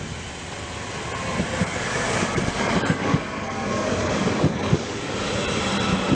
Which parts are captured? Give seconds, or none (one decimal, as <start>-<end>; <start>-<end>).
0.0-1.6; 5.3-6.1